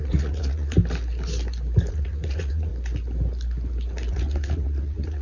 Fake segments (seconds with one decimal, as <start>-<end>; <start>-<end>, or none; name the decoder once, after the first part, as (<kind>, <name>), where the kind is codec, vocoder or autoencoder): 0.0-0.8 (vocoder, Vocos); 1.9-2.7; 4.1-5.2